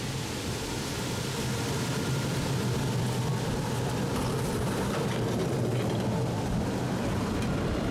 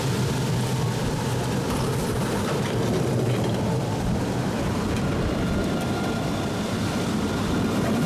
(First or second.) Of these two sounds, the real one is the first